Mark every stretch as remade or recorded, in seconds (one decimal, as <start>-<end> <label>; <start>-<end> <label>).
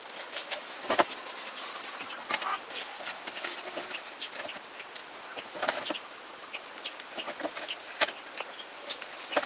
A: 0.0-5.0 recorded; 5.0-5.9 remade; 5.9-9.5 recorded